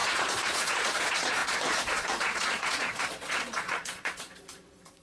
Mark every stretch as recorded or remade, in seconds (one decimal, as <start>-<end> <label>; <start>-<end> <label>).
0.0-5.0 remade